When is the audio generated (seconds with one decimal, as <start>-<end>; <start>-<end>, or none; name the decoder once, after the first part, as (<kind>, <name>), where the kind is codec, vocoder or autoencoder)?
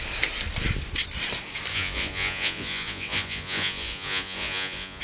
1.7-5.0 (vocoder, Vocos)